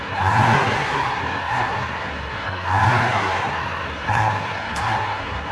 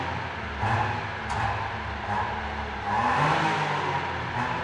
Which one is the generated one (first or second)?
first